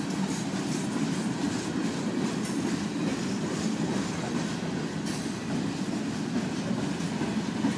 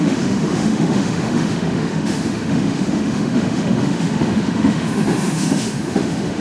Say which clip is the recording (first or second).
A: first